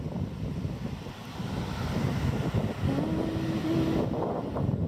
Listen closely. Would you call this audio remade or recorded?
recorded